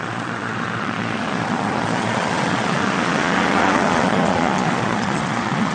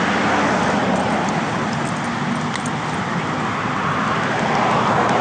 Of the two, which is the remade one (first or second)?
first